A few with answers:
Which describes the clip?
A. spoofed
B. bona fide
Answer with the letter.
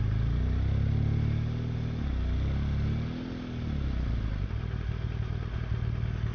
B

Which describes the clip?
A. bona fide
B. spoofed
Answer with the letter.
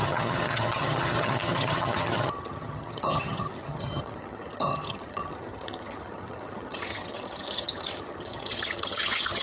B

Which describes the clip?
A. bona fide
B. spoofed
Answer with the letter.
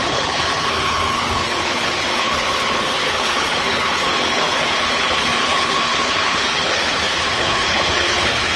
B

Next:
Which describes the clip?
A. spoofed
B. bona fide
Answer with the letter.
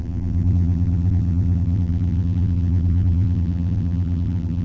A